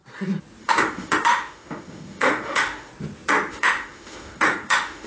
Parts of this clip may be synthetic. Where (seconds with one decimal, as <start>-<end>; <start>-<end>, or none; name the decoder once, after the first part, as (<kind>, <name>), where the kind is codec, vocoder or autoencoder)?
0.6-2.9 (autoencoder, DAC-VAE); 3.5-5.1